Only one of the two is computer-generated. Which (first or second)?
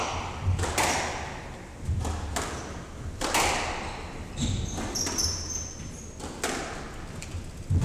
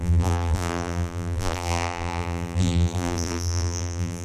second